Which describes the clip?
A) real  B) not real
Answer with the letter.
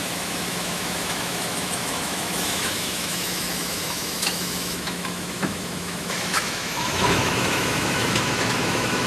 B